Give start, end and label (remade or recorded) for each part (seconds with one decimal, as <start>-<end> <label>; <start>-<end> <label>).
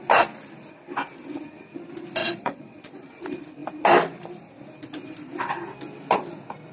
0.0-2.2 recorded; 2.2-3.2 remade; 3.2-6.7 recorded